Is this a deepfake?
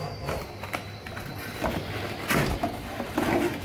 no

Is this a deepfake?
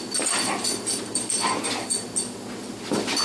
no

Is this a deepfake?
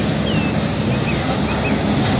no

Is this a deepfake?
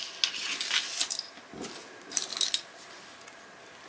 no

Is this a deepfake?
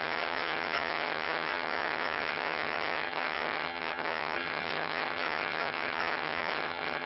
yes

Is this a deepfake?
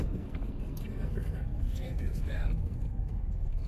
yes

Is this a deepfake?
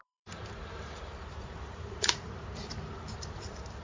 yes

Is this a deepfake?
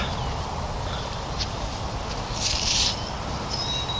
no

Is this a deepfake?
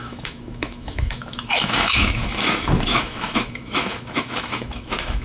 yes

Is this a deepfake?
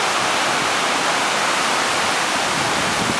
no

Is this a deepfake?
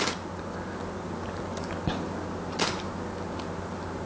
no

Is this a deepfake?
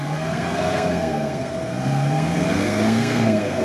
yes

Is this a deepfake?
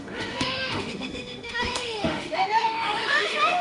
yes